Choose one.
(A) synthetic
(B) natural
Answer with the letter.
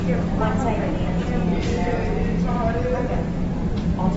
A